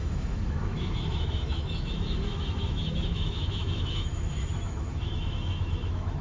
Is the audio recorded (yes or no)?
no